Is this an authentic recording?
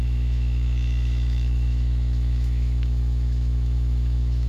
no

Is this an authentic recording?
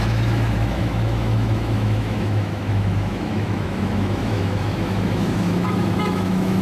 no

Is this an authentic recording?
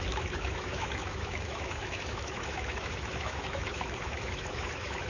no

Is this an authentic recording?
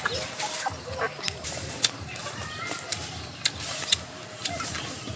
yes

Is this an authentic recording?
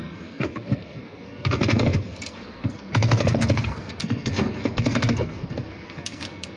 no